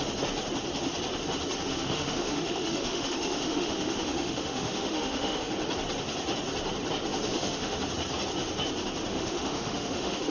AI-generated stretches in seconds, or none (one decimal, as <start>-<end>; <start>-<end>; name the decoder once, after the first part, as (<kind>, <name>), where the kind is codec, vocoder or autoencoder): 1.7-5.5 (autoencoder, DAC-VAE); 7.3-7.8; 9.1-10.3